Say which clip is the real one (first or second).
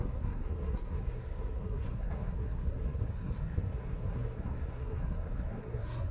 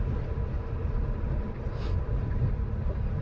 second